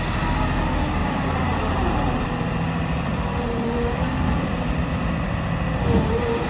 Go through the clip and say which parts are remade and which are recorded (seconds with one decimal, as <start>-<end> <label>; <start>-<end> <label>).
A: 0.0-1.0 recorded; 1.0-4.9 remade; 4.9-6.5 recorded